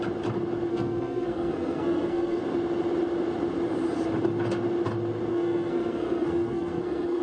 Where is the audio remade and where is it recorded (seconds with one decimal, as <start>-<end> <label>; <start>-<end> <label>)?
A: 0.0-0.7 recorded; 0.7-2.4 remade; 2.4-5.3 recorded; 5.3-7.2 remade

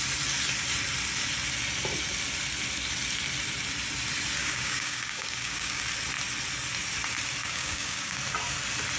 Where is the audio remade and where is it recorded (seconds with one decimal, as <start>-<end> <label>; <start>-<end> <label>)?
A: 0.0-4.4 recorded; 4.4-5.8 remade; 5.8-7.4 recorded; 7.4-8.2 remade; 8.2-9.0 recorded

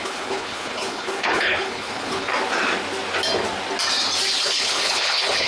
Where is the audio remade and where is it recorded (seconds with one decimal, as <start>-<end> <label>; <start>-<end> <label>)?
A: 0.0-2.3 remade; 2.3-4.4 recorded; 4.4-5.5 remade

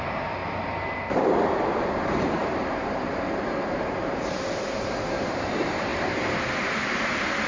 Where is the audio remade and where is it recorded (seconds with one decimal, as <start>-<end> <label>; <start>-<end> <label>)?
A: 0.0-0.4 remade; 0.4-1.6 recorded; 1.6-7.5 remade

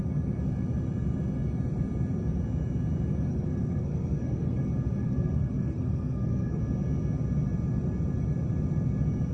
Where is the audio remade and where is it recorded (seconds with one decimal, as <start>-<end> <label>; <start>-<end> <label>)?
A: 0.0-3.3 recorded; 3.3-4.6 remade; 4.6-5.0 recorded; 5.0-6.6 remade; 6.6-9.3 recorded